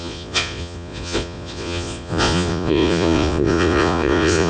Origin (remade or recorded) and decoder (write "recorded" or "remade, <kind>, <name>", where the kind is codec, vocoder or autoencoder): remade, vocoder, Vocos